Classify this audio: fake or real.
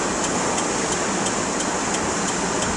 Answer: real